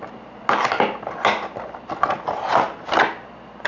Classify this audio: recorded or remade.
recorded